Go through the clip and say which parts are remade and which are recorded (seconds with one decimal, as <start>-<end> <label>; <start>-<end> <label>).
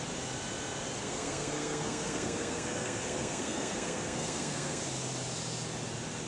0.0-1.0 recorded; 1.0-4.8 remade; 4.8-6.3 recorded